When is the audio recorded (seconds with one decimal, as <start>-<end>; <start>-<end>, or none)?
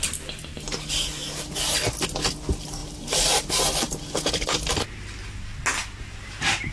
0.0-2.8; 3.6-6.7